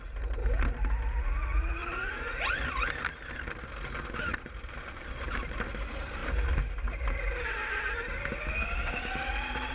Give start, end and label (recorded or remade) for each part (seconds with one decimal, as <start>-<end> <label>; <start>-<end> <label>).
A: 0.0-4.3 recorded; 4.3-5.5 remade; 5.5-9.7 recorded

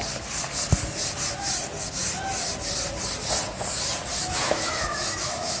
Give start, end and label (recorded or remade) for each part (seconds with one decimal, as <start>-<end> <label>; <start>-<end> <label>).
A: 0.0-4.1 recorded; 4.1-5.6 remade

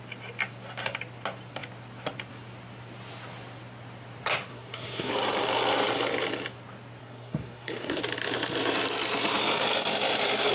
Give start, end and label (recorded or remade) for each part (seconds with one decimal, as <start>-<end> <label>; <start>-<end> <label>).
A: 0.0-4.5 recorded; 4.5-5.1 remade; 5.1-7.0 recorded; 7.0-8.0 remade; 8.0-10.5 recorded